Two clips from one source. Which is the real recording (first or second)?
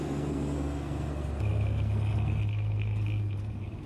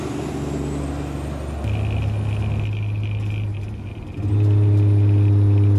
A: second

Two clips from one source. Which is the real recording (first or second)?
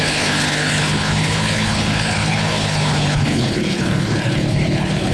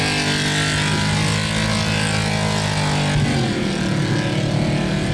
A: second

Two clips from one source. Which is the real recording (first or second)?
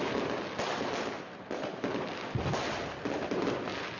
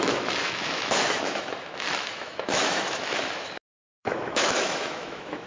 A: first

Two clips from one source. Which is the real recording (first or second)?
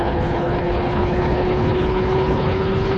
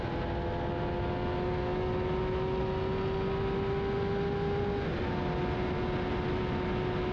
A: second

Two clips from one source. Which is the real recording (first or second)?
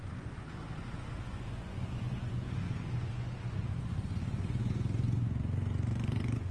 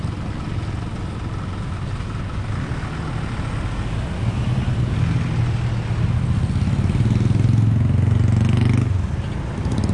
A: second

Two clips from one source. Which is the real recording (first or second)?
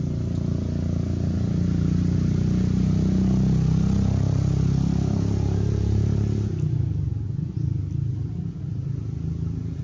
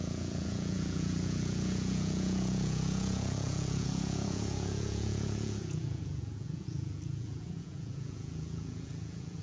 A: first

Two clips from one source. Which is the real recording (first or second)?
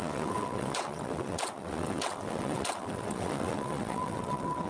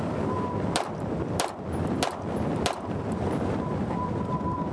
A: second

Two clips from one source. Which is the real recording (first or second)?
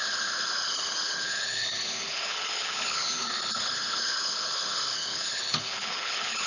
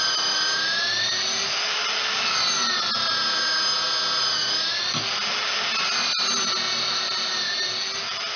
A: second